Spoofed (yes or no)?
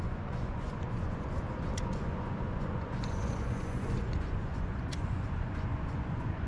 yes